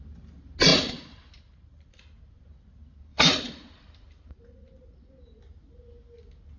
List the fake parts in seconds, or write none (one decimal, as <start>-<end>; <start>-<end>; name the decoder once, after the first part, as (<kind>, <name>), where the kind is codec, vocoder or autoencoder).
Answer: 0.7-1.9 (vocoder, BigVGAN v2); 3.1-5.0